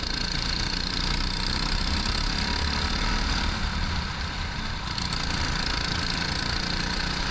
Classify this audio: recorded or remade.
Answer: recorded